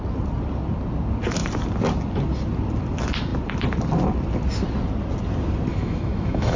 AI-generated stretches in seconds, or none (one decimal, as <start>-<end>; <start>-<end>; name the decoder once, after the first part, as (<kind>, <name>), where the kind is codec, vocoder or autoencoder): 5.7-6.6 (autoencoder, DAC-VAE)